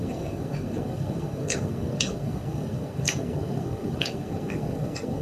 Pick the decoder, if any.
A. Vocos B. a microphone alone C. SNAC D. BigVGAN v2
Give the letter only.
C